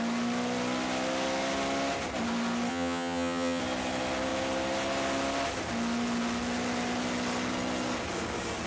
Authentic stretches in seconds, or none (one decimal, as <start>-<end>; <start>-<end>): 0.0-2.7; 3.6-8.7